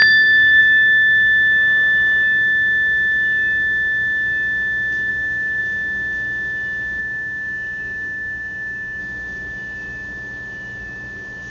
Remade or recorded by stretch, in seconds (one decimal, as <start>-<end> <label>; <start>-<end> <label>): 0.0-0.6 remade; 0.6-5.1 recorded; 5.1-5.6 remade; 5.6-7.0 recorded; 7.0-9.0 remade; 9.0-11.5 recorded